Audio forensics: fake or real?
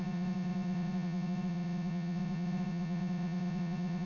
fake